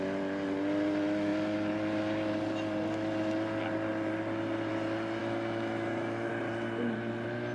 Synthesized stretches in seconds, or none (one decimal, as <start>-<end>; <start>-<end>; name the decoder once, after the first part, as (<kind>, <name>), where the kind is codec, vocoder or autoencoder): 5.2-6.3 (autoencoder, DAC-VAE)